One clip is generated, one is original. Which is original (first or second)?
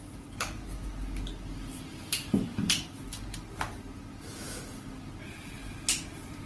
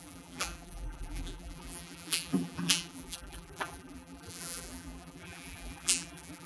first